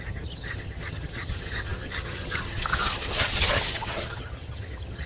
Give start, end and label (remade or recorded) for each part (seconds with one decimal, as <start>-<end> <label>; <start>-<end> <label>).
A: 0.0-5.1 remade